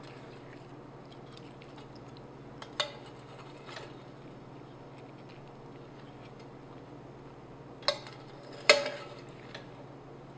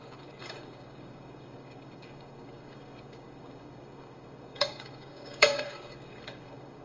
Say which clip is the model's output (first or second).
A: second